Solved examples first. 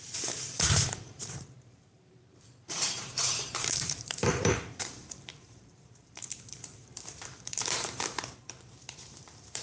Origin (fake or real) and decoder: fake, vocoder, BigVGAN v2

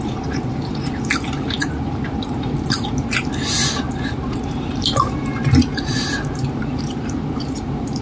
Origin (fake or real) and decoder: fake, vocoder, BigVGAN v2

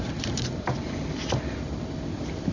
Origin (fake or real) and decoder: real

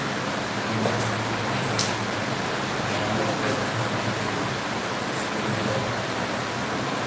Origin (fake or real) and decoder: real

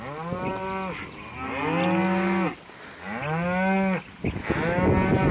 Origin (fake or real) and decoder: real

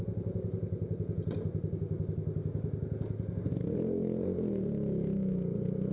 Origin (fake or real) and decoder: real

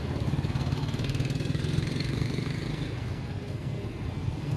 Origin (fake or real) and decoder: fake, codec, SNAC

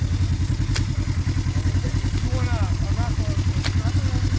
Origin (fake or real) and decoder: real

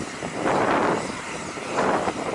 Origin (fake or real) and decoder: fake, vocoder, BigVGAN v2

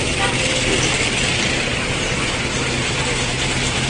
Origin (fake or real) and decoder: real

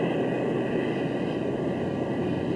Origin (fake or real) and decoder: real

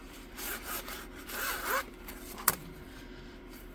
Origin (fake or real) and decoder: fake, vocoder, BigVGAN v2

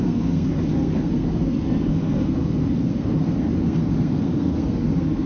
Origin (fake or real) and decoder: fake, codec, SNAC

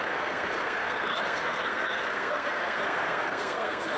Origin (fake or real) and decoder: fake, codec, SNAC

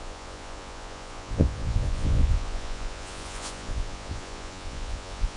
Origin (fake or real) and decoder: fake, vocoder, Vocos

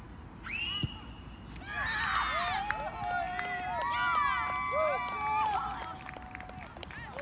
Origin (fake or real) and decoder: real